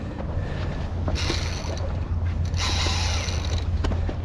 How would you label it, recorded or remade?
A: recorded